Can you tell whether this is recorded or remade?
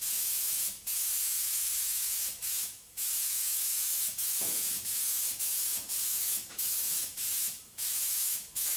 remade